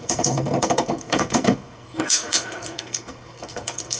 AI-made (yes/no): yes